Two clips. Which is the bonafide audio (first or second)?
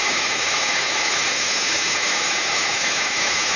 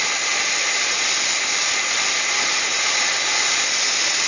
second